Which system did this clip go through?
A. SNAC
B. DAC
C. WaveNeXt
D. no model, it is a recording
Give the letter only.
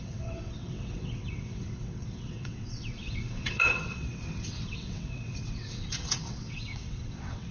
C